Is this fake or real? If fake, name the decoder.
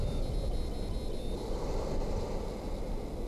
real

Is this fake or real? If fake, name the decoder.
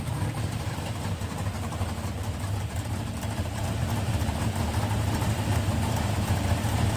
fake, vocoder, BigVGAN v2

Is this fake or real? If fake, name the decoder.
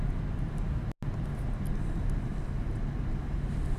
real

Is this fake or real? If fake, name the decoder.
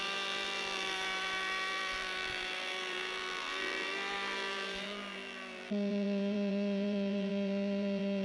fake, vocoder, BigVGAN v2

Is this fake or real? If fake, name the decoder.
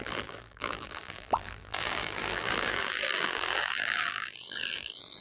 fake, vocoder, BigVGAN v2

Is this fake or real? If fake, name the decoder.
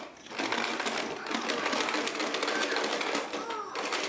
real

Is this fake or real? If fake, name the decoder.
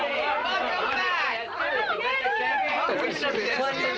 real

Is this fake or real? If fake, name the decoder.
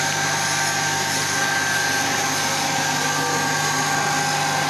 real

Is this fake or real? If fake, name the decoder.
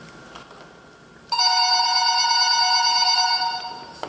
real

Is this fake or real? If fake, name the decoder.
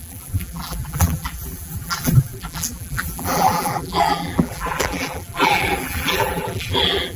fake, vocoder, BigVGAN v2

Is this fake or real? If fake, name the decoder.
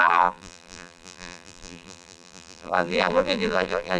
fake, vocoder, BigVGAN v2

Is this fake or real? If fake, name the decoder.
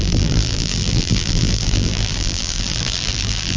fake, vocoder, BigVGAN v2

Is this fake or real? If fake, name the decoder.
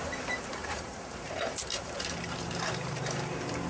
fake, vocoder, BigVGAN v2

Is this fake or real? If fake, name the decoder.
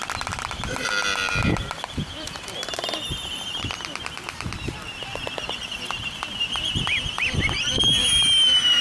fake, vocoder, BigVGAN v2